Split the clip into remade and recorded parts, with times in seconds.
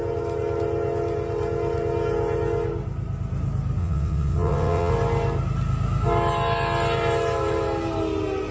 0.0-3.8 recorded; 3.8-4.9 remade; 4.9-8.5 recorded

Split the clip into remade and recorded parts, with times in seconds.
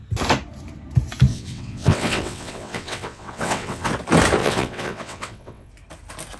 0.0-1.3 recorded; 1.3-3.9 remade; 3.9-4.4 recorded; 4.4-5.7 remade; 5.7-6.4 recorded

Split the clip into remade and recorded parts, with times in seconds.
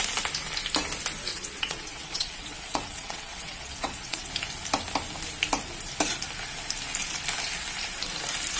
0.0-1.3 recorded; 1.3-4.3 remade; 4.3-8.6 recorded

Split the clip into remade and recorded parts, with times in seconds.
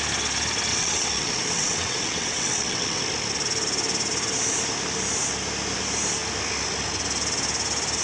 0.0-0.7 recorded; 0.7-3.0 remade; 3.0-8.0 recorded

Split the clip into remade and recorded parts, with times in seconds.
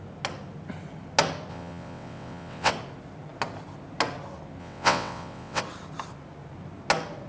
0.0-1.5 recorded; 1.5-2.7 remade; 2.7-4.6 recorded; 4.6-5.6 remade; 5.6-7.3 recorded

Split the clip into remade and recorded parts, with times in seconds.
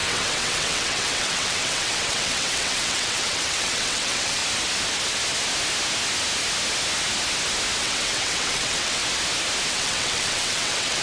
0.0-4.4 remade; 4.4-7.8 recorded; 7.8-9.0 remade; 9.0-9.7 recorded; 9.7-11.0 remade